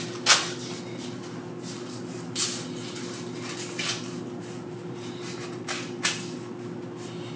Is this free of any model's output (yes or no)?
yes